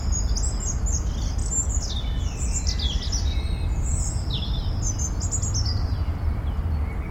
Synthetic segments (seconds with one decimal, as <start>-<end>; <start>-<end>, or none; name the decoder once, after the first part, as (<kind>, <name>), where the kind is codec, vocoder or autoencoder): none